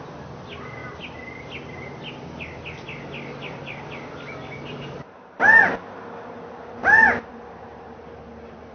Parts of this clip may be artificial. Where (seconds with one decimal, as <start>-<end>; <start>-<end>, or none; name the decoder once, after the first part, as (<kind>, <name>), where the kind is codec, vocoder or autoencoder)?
4.7-5.4 (vocoder, BigVGAN v2); 7.3-8.0